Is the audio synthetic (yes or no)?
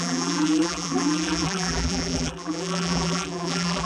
yes